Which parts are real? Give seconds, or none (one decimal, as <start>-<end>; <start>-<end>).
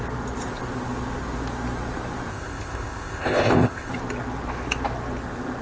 0.0-2.3; 3.9-5.6